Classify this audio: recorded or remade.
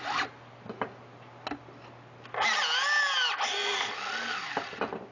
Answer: recorded